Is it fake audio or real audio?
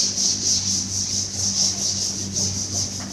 real